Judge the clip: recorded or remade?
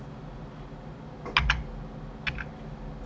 recorded